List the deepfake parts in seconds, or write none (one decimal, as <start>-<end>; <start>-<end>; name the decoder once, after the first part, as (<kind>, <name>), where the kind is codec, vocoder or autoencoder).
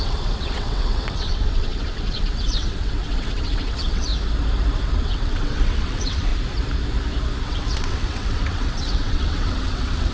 0.0-4.1 (vocoder, WaveNeXt); 4.8-6.3; 7.4-10.1